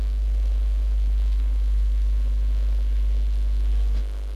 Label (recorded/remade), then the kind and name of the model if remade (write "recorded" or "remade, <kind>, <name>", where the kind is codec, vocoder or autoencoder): remade, codec, SNAC